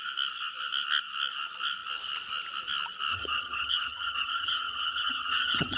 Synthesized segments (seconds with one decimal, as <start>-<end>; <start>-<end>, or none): 3.1-5.8